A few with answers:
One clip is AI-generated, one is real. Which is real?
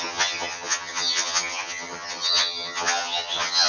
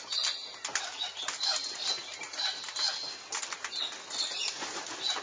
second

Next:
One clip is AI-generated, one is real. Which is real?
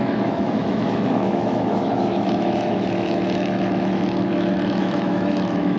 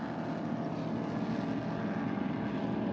second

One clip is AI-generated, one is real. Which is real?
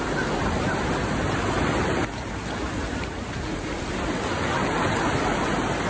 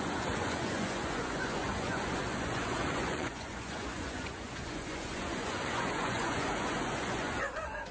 first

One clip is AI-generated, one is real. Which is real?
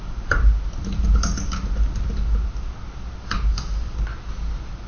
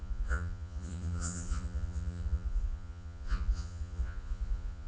first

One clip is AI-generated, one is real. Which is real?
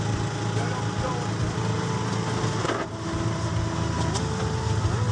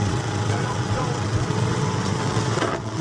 first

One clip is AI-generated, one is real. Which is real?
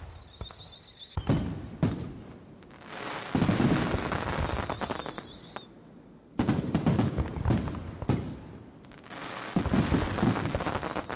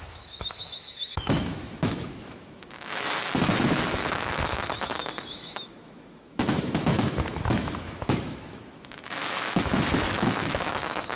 first